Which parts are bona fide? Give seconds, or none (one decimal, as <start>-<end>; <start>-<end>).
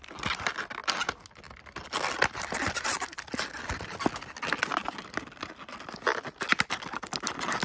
0.0-7.6